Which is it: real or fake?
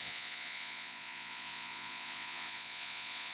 fake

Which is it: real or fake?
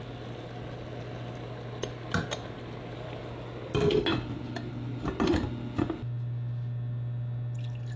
real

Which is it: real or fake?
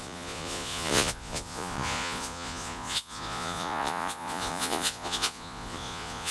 fake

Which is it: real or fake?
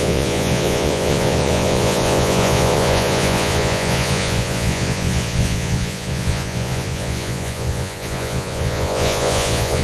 fake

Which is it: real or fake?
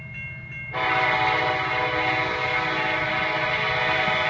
real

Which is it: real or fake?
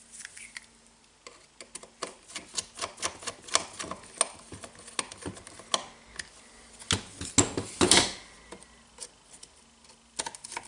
real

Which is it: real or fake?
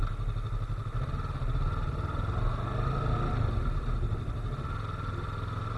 real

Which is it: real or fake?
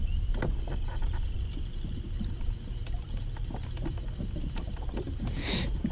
real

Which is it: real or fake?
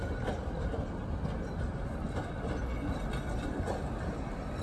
real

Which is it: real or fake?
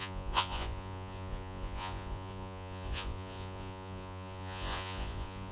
fake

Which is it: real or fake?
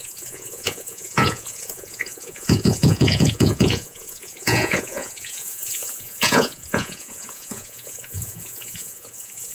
fake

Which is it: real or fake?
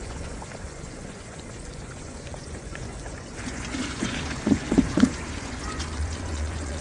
fake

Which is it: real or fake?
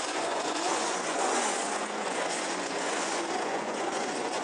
fake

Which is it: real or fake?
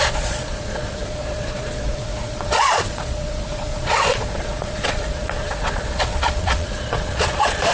fake